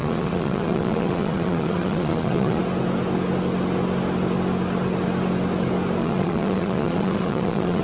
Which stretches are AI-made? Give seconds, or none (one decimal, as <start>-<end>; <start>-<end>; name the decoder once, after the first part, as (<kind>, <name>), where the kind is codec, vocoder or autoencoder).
0.0-2.6 (vocoder, Vocos); 6.0-7.8